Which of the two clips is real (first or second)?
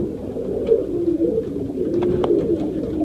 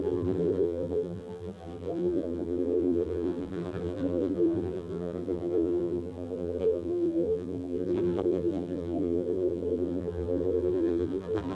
first